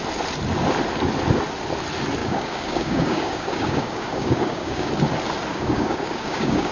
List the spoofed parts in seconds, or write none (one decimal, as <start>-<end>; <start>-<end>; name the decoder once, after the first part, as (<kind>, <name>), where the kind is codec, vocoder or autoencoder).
2.2-4.9 (codec, DAC); 5.5-6.7